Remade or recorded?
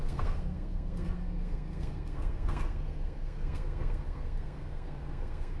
remade